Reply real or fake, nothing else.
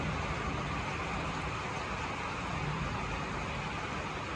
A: real